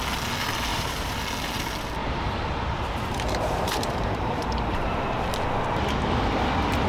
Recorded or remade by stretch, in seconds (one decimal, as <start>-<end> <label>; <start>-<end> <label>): 0.0-0.7 recorded; 0.7-1.2 remade; 1.2-2.0 recorded; 2.0-5.2 remade; 5.2-6.9 recorded